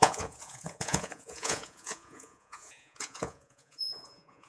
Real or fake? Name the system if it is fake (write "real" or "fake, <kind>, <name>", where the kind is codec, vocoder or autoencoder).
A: fake, vocoder, Vocos